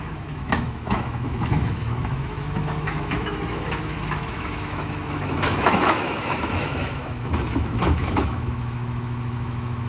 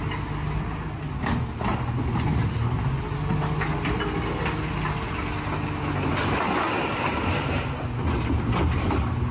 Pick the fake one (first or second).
first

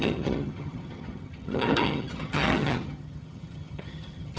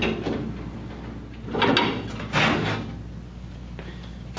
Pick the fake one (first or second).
first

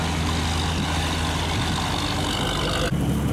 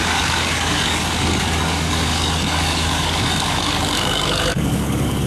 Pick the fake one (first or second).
second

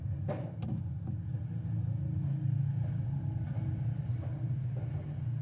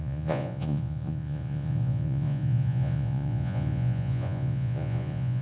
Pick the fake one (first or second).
second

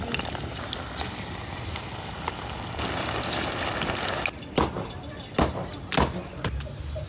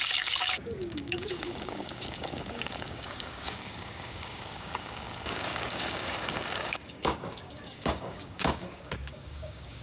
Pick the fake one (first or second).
second